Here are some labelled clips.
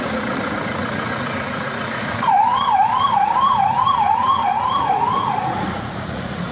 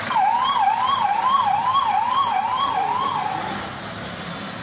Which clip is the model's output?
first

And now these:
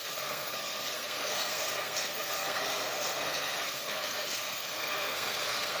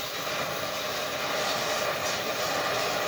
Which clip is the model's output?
first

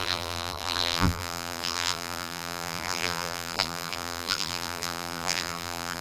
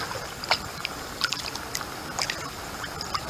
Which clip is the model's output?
first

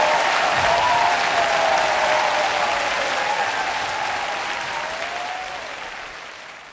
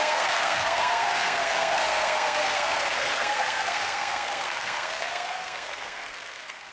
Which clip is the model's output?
second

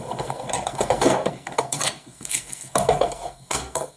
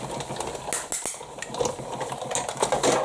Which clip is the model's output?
first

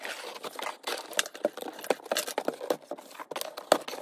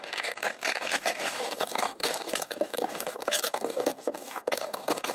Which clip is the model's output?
second